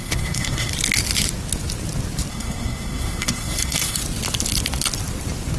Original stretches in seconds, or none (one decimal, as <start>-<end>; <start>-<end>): 0.7-2.3; 4.0-5.6